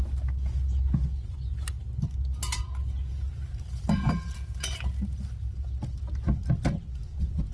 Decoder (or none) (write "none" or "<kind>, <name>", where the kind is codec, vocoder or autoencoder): none